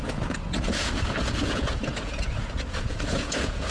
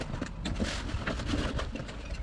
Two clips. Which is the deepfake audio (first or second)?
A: first